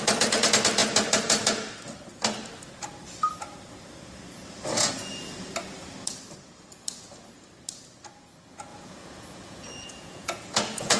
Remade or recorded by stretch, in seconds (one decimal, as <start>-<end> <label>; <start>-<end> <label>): 0.0-8.7 recorded; 8.7-11.0 remade